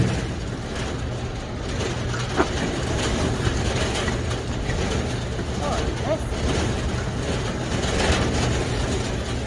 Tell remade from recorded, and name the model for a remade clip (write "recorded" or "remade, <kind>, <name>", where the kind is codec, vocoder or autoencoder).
recorded